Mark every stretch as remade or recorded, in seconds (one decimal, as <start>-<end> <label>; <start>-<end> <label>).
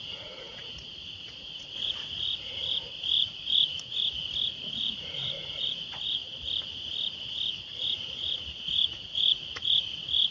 0.0-6.2 remade; 6.2-7.5 recorded; 7.5-10.3 remade